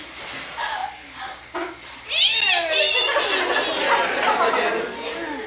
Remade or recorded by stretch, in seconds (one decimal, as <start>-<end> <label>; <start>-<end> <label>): 0.0-5.5 recorded